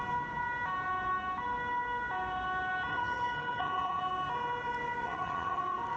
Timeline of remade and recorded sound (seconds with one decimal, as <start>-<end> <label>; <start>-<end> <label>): 0.0-2.9 recorded; 2.9-4.0 remade; 4.0-5.0 recorded; 5.0-5.6 remade; 5.6-6.0 recorded